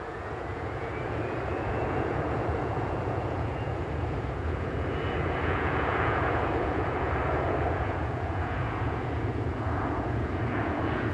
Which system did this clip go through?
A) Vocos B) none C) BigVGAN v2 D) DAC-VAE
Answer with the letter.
A